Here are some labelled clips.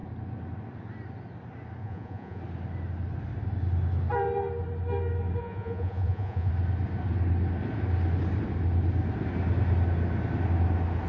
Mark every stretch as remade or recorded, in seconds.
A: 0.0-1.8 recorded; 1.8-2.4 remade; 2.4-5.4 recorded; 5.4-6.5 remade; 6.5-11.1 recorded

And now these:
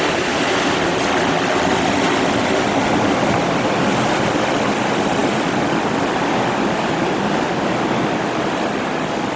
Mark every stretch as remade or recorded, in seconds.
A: 0.0-2.8 recorded; 2.8-4.8 remade; 4.8-5.2 recorded; 5.2-7.7 remade; 7.7-9.4 recorded

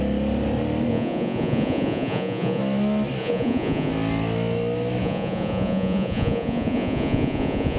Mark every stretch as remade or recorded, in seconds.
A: 0.0-0.9 recorded; 0.9-2.6 remade; 2.6-3.2 recorded; 3.2-3.9 remade; 3.9-5.0 recorded; 5.0-7.8 remade

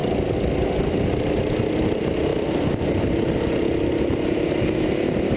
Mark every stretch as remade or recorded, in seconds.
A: 0.0-1.1 recorded; 1.1-2.3 remade; 2.3-2.8 recorded; 2.8-5.4 remade

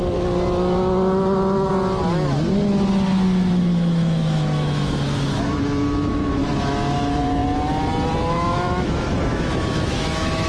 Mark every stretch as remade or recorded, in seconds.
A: 0.0-3.6 recorded; 3.6-7.4 remade; 7.4-8.3 recorded; 8.3-10.5 remade

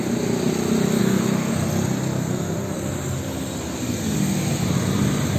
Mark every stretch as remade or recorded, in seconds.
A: 0.0-1.0 recorded; 1.0-1.5 remade; 1.5-2.2 recorded; 2.2-2.9 remade; 2.9-5.4 recorded

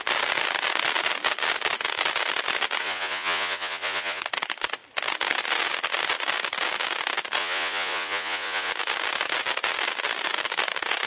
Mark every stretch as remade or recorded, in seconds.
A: 0.0-2.8 recorded; 2.8-4.2 remade; 4.2-7.4 recorded; 7.4-8.7 remade; 8.7-11.1 recorded